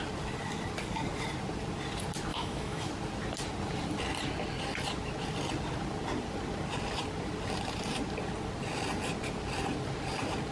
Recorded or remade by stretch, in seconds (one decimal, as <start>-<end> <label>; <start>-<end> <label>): 0.0-2.3 recorded; 2.3-2.9 remade; 2.9-10.5 recorded